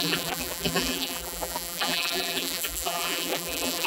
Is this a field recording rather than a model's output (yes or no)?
no